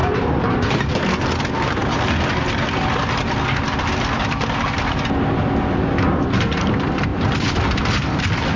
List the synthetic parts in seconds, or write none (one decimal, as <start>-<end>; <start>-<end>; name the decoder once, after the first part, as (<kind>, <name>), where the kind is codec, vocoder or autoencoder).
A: 0.0-0.6 (vocoder, BigVGAN v2); 7.1-7.8